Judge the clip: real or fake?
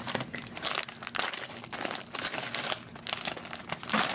real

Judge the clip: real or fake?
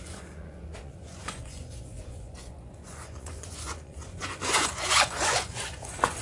fake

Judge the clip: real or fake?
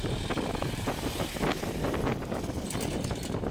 real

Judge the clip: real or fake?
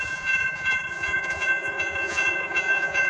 fake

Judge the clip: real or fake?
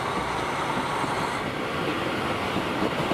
real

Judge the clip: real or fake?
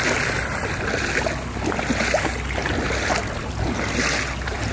real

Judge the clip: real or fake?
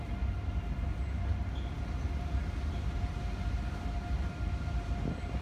real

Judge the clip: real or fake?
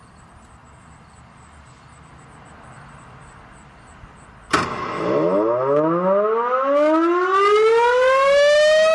real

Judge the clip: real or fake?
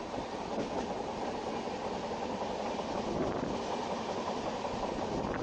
real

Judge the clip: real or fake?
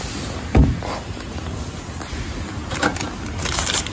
real